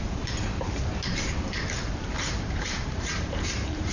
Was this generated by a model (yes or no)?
yes